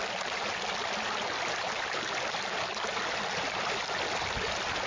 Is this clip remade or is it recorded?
recorded